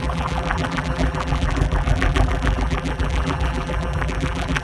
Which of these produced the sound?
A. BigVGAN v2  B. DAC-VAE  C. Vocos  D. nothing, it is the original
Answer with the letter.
A